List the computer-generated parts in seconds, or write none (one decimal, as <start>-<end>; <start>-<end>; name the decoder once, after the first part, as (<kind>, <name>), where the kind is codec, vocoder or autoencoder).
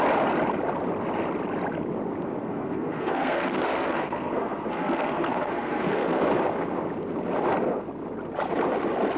2.4-6.2 (codec, SNAC)